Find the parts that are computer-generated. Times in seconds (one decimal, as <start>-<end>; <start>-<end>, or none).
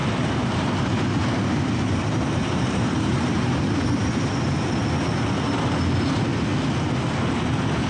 0.0-4.7